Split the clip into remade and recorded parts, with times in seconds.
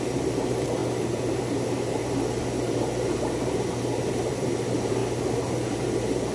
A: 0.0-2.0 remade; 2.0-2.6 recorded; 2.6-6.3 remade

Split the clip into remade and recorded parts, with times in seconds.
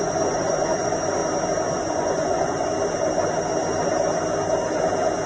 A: 0.0-1.2 remade; 1.2-1.7 recorded; 1.7-2.7 remade; 2.7-5.3 recorded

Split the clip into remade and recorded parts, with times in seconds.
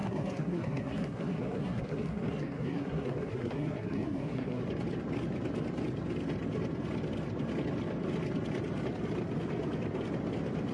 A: 0.0-4.6 remade; 4.6-10.7 recorded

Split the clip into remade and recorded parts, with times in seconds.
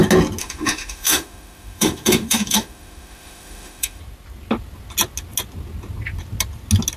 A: 0.0-0.4 recorded; 0.4-4.0 remade; 4.0-7.0 recorded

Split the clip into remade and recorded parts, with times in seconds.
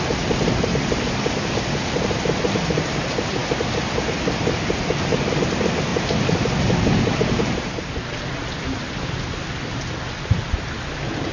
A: 0.0-11.3 recorded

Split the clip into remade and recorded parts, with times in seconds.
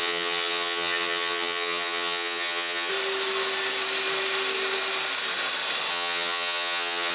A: 0.0-2.9 remade; 2.9-5.9 recorded; 5.9-7.1 remade